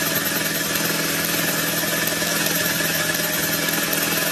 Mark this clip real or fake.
real